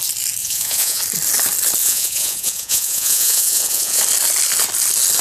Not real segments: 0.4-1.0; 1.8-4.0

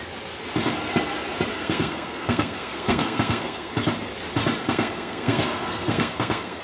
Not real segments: 1.5-3.7; 4.6-6.6

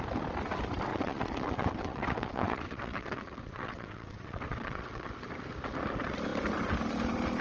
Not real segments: 0.9-5.1

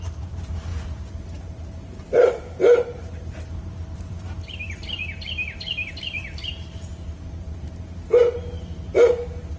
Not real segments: 0.0-8.9

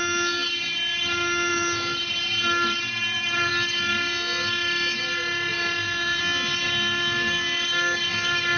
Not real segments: 1.5-3.5; 5.5-6.2

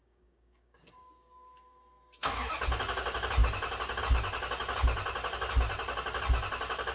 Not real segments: 0.0-2.5

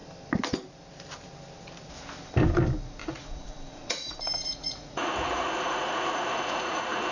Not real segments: 3.0-7.1

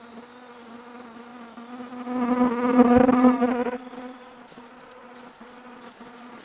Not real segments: 2.7-6.4